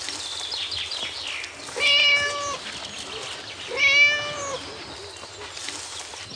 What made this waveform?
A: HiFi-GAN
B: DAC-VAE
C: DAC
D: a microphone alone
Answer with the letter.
D